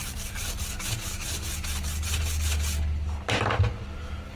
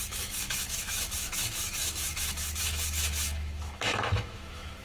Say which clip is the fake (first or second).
second